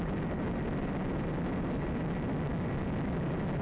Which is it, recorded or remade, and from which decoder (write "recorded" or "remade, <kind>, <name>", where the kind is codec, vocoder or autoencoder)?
recorded